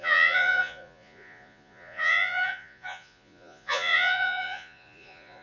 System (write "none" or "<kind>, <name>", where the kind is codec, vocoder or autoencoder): vocoder, Vocos